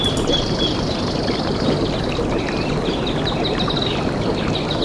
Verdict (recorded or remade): recorded